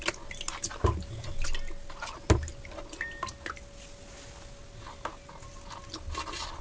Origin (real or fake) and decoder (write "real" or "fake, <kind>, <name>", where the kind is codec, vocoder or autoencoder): real